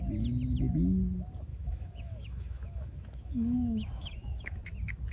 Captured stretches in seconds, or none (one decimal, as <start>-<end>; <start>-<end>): 0.0-1.5; 4.6-5.1

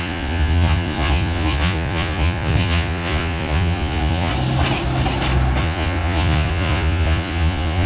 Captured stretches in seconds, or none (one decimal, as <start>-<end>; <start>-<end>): 4.3-5.6

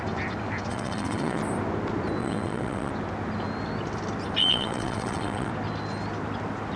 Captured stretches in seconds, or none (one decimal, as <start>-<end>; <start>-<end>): 0.0-0.7; 1.4-2.2; 2.9-4.4; 5.5-6.8

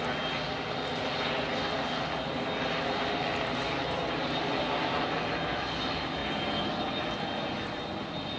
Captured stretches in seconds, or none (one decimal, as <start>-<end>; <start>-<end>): 0.0-8.4